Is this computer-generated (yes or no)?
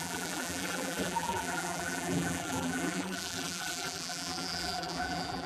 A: yes